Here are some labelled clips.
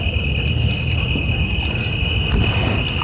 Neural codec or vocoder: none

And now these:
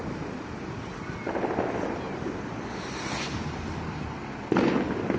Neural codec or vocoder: none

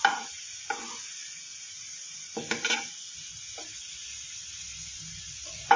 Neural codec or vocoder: none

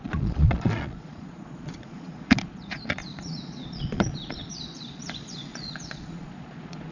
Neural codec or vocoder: vocoder, Vocos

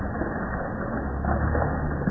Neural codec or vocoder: none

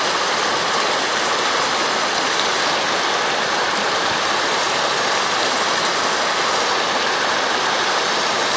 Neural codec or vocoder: none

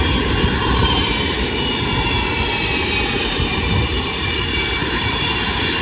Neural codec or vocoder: vocoder, BigVGAN v2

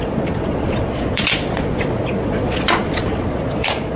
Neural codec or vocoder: vocoder, Vocos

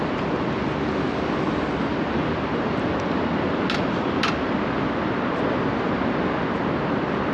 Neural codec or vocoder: none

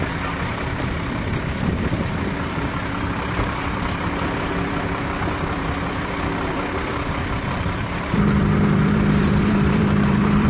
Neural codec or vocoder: vocoder, BigVGAN v2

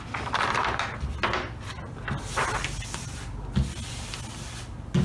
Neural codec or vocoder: none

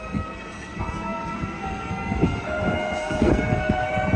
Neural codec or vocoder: codec, SNAC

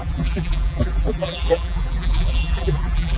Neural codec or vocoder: vocoder, BigVGAN v2